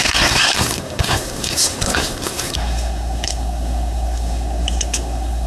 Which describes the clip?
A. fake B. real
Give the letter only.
A